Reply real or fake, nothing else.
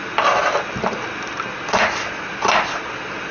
real